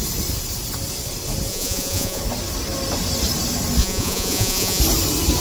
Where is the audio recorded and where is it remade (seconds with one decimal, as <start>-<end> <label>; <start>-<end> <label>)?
0.0-1.5 recorded; 1.5-2.2 remade; 2.2-3.8 recorded; 3.8-4.8 remade; 4.8-5.4 recorded